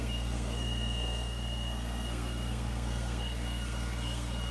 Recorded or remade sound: remade